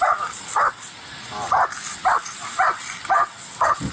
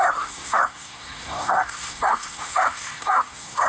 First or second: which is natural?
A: first